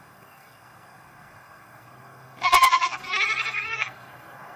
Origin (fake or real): fake